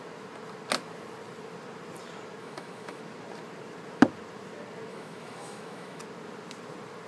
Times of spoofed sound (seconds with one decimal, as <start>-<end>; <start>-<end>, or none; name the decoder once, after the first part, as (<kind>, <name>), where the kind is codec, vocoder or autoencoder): 2.4-3.0 (autoencoder, DAC-VAE); 4.9-6.0